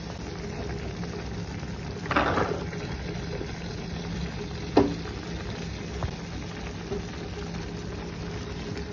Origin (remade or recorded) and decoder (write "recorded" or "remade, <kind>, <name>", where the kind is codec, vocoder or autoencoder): recorded